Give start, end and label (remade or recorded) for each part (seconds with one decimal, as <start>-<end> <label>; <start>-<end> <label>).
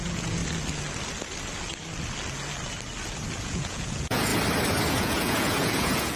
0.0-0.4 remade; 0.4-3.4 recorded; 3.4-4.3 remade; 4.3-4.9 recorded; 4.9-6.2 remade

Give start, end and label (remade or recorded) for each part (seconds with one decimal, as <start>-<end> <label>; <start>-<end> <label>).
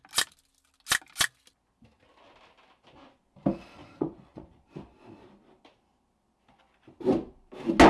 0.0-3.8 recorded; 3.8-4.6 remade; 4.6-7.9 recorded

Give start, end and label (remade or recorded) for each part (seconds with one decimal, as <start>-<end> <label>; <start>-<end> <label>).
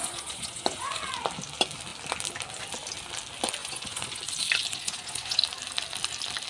0.0-1.0 remade; 1.0-3.6 recorded; 3.6-4.2 remade; 4.2-4.7 recorded; 4.7-5.4 remade; 5.4-6.5 recorded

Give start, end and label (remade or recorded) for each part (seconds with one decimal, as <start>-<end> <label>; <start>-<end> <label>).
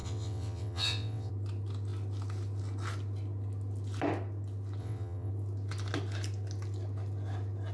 0.0-1.3 remade; 1.3-4.8 recorded; 4.8-5.3 remade; 5.3-7.7 recorded